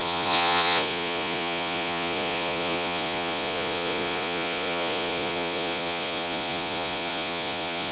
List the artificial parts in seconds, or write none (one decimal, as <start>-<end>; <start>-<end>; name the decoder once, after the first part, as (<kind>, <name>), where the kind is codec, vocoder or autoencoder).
0.0-7.9 (vocoder, Vocos)